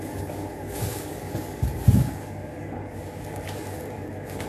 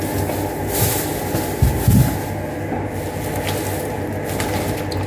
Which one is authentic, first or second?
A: second